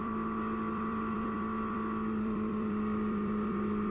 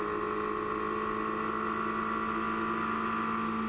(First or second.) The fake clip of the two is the first